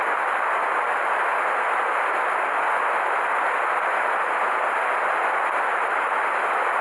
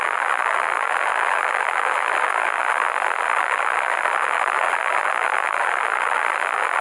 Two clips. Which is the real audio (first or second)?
first